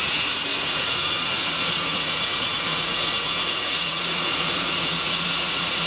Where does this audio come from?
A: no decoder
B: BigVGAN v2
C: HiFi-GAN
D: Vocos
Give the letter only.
D